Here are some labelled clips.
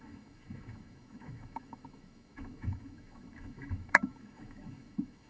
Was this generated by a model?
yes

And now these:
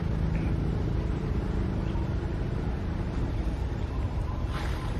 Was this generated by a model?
no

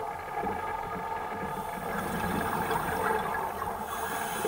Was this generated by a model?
no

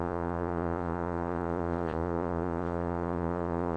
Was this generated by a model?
yes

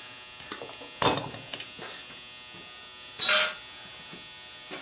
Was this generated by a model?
no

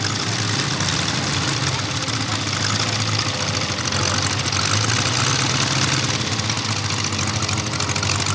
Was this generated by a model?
no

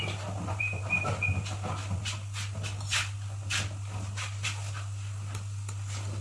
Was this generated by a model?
no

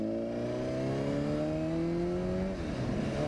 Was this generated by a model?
no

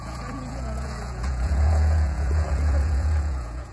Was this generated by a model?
yes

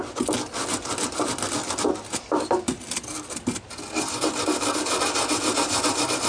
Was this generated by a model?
no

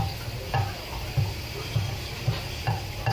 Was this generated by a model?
no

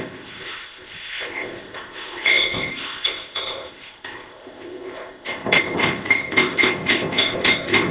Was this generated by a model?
yes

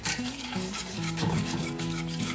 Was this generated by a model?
yes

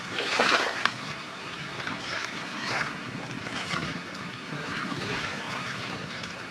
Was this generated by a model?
yes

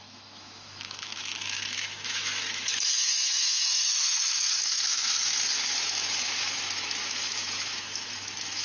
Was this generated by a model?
yes